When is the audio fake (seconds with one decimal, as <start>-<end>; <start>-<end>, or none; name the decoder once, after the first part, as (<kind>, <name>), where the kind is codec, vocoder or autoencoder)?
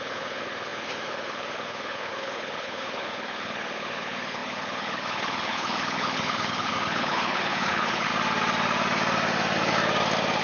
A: 0.0-8.1 (codec, HILCodec)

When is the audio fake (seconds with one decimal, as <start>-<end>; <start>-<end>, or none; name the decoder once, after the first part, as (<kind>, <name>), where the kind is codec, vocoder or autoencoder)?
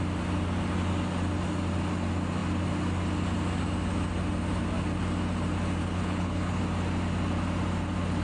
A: 5.8-6.6 (codec, HILCodec)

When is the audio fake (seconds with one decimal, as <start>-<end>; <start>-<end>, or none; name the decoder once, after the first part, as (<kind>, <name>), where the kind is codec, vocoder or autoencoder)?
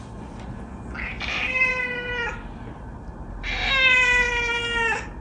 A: none